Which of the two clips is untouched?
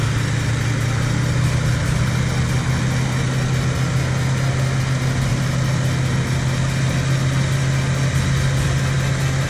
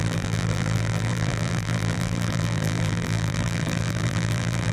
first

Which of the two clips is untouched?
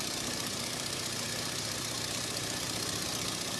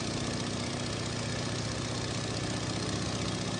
second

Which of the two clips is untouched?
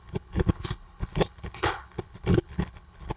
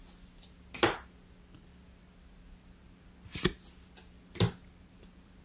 second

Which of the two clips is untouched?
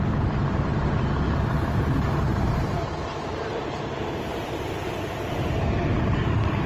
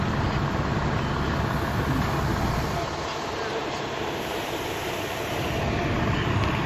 second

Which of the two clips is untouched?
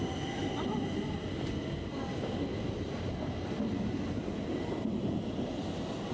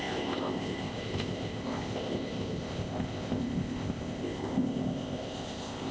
first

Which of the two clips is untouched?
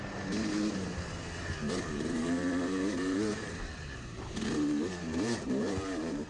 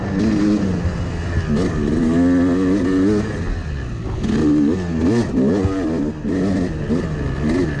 second